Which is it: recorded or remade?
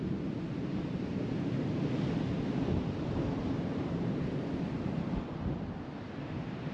recorded